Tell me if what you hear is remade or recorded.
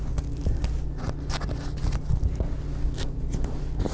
recorded